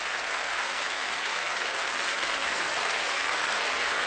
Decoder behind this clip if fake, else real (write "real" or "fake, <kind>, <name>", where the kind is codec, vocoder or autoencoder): fake, codec, SNAC